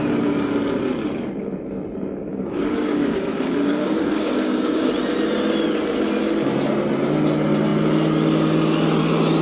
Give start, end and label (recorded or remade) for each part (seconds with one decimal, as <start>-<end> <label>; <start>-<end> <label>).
0.0-2.3 recorded; 2.3-4.9 remade; 4.9-9.4 recorded